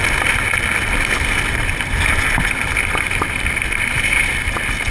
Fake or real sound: fake